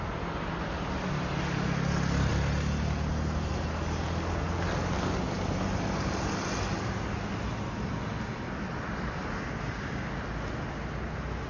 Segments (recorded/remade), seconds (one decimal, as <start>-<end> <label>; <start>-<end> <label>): 0.0-9.5 recorded; 9.5-10.1 remade; 10.1-11.5 recorded